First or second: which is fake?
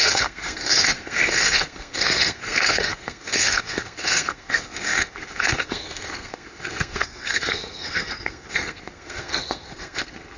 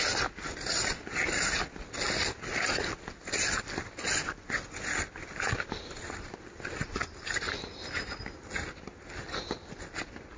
first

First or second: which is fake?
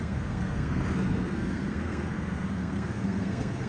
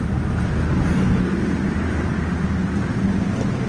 first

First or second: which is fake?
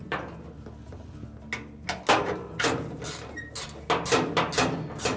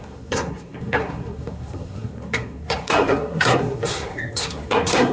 second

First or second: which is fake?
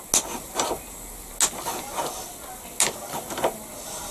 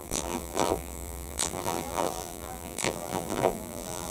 second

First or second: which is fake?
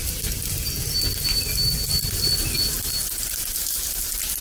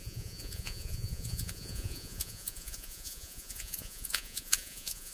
second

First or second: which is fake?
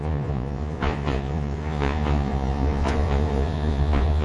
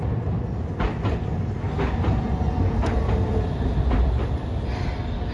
first